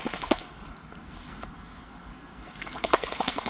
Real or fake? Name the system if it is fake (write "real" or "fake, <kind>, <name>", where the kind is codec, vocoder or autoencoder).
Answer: fake, codec, SNAC